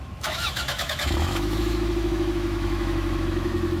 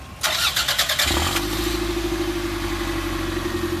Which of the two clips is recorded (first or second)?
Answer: second